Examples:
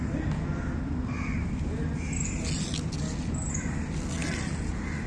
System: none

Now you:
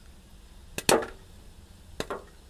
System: none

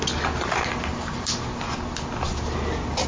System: none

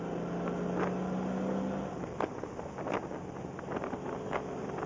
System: none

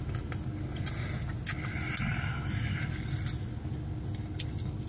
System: none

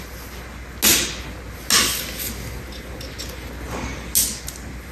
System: none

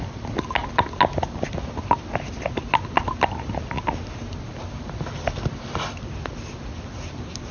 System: none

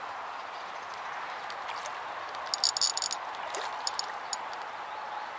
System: none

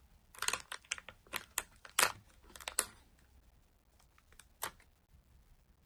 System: none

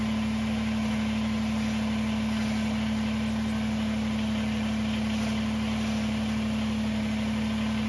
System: none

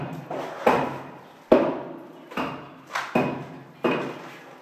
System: none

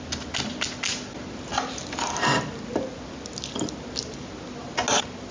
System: none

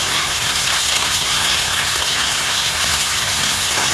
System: codec, SNAC